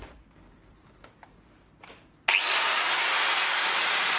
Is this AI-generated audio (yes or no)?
no